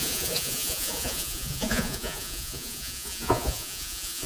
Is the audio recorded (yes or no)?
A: no